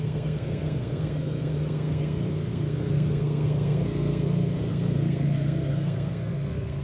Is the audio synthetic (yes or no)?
yes